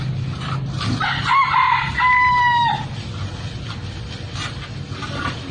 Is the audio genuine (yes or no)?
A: yes